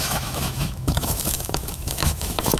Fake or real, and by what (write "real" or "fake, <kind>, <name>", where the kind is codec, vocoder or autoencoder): fake, autoencoder, DAC-VAE